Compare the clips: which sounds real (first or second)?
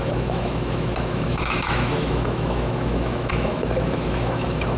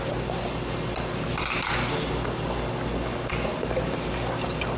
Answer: second